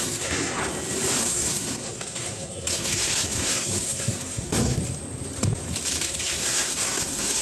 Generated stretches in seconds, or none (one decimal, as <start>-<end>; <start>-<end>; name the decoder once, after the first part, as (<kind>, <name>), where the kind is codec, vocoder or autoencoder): 0.0-0.6 (codec, SNAC); 1.2-4.8; 6.0-7.4